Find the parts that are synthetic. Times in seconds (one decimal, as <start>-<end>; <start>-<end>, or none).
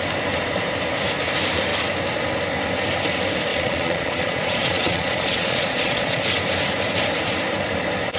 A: 3.5-6.2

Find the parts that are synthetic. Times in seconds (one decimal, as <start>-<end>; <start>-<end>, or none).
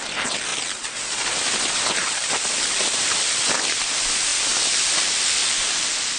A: 2.0-3.4; 5.4-6.2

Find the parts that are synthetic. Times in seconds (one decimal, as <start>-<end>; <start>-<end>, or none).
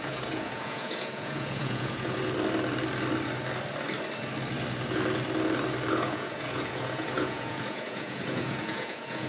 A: 0.0-2.2; 5.9-9.3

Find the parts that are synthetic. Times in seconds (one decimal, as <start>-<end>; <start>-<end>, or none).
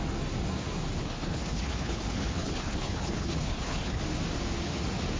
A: 1.0-4.0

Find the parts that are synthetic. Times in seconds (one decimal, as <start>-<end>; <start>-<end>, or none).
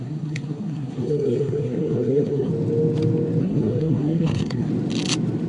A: 0.0-2.5; 3.4-4.7